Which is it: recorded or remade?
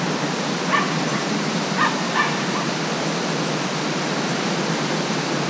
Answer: recorded